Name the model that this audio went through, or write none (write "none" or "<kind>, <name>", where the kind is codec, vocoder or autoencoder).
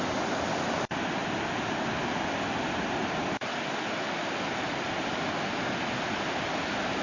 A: none